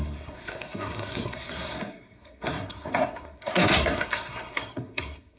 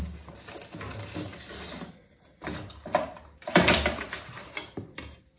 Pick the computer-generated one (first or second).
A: first